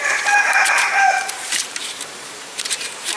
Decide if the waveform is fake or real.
fake